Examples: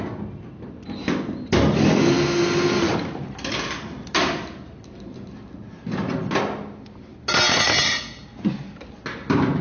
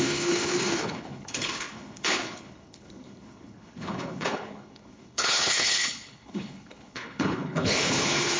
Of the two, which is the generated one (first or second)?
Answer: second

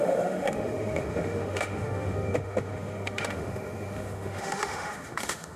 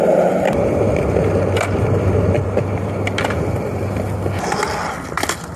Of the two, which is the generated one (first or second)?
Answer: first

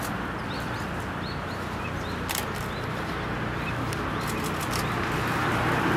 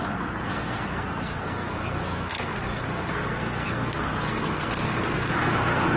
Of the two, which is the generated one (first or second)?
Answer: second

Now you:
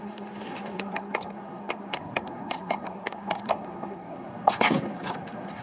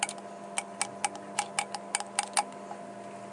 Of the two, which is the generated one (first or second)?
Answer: first